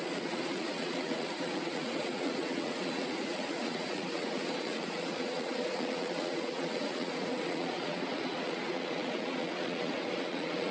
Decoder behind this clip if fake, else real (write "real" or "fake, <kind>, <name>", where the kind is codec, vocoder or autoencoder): fake, vocoder, Vocos